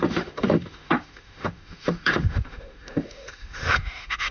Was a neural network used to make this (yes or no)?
yes